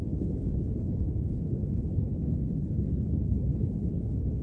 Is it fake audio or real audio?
fake